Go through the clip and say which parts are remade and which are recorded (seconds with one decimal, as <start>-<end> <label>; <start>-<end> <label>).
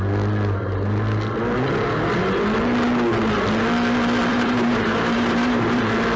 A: 0.0-4.3 recorded; 4.3-5.8 remade; 5.8-6.2 recorded